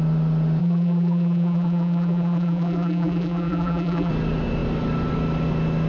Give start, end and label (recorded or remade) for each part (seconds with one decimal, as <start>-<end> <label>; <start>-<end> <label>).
0.0-0.6 recorded; 0.6-4.1 remade; 4.1-5.9 recorded